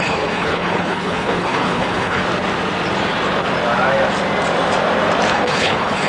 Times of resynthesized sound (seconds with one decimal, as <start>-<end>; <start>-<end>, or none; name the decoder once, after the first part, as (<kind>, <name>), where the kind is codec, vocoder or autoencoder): 0.0-2.2 (codec, HILCodec); 5.3-6.1